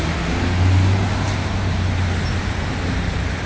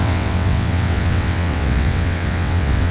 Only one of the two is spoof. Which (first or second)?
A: second